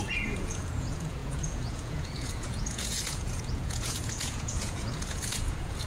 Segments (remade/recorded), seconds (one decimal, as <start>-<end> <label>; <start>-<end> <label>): 0.0-5.9 remade